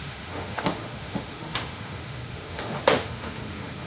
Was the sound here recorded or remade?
remade